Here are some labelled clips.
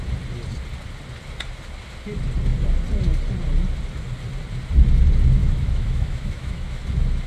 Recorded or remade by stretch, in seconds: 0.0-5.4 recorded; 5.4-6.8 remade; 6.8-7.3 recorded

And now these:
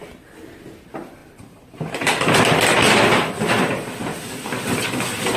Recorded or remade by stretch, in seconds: 0.0-5.4 recorded

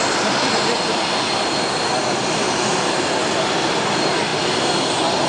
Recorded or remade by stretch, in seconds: 0.0-5.3 recorded

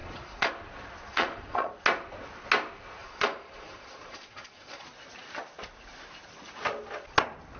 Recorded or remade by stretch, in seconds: 0.0-0.5 remade; 0.5-1.1 recorded; 1.1-1.7 remade; 1.7-3.0 recorded; 3.0-4.9 remade; 4.9-7.6 recorded

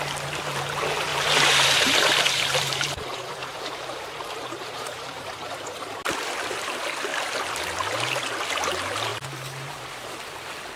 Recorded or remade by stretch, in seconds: 0.0-1.1 recorded; 1.1-2.9 remade; 2.9-3.4 recorded; 3.4-5.2 remade; 5.2-9.1 recorded; 9.1-10.1 remade; 10.1-10.8 recorded

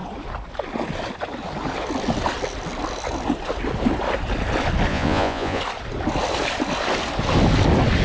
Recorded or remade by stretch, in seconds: 0.0-4.9 recorded; 4.9-5.6 remade; 5.6-8.0 recorded